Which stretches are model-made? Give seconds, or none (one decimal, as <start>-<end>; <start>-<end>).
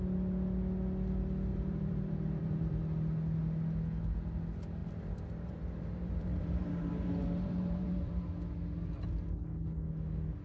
1.5-2.8; 4.8-8.3